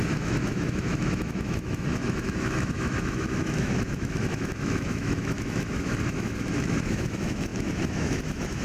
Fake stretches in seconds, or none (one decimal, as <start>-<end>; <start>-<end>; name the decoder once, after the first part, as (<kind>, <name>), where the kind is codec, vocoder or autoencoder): 0.0-8.6 (autoencoder, DAC-VAE)